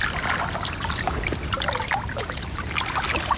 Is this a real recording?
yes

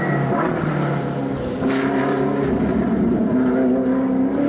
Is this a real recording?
yes